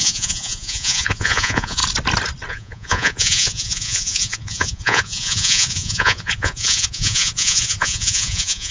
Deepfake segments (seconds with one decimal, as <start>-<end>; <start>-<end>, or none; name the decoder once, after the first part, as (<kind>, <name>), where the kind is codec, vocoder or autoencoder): 0.0-1.8 (vocoder, Vocos); 2.5-8.7